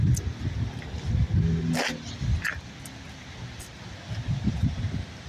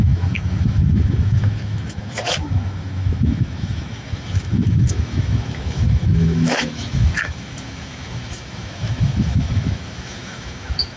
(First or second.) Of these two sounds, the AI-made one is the second